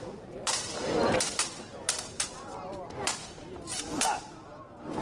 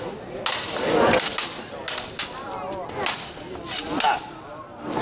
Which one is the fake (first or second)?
first